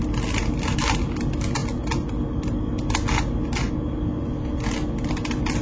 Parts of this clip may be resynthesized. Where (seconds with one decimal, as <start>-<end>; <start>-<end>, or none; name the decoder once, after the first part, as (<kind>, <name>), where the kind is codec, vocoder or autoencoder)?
none